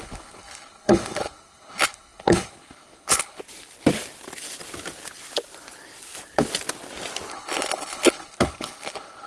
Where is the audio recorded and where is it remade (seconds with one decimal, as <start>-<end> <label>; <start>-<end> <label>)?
0.0-3.4 remade; 3.4-7.3 recorded; 7.3-9.3 remade